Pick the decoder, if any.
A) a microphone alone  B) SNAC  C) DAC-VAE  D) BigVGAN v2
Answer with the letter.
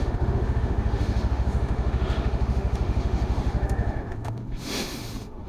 C